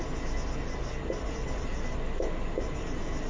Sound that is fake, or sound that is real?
real